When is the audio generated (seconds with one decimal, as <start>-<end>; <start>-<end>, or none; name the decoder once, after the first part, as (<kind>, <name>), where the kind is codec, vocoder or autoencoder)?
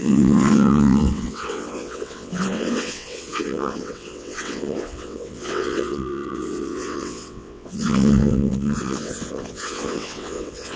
0.0-10.8 (vocoder, WaveNeXt)